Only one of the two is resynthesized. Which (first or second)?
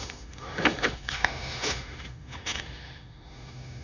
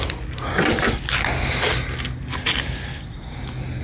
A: first